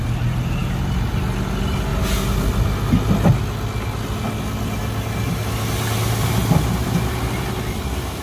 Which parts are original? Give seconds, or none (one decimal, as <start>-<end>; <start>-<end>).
0.0-8.2